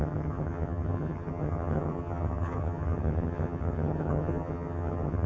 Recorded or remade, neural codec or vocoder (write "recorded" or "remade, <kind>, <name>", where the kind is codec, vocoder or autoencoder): remade, vocoder, HiFi-GAN